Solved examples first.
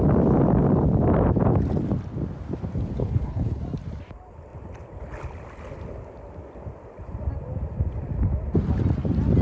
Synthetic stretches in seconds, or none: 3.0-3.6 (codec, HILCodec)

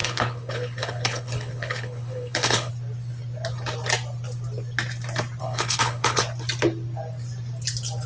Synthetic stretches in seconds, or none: 0.0-2.7 (codec, HILCodec); 5.4-6.2

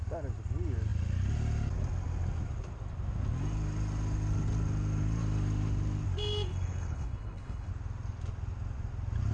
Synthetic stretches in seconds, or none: 6.5-7.7 (codec, HILCodec)